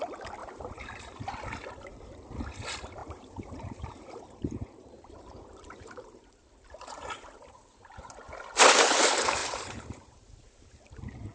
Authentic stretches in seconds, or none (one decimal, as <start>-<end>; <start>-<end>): 0.0-0.4; 1.3-3.0; 8.1-9.4; 10.7-11.3